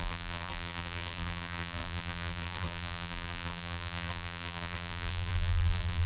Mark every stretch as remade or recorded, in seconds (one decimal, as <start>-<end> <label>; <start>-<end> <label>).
0.0-6.1 remade